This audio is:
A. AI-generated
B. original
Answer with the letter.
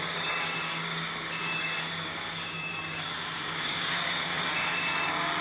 A